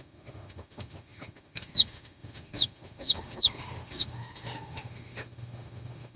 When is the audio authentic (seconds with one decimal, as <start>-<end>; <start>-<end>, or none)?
none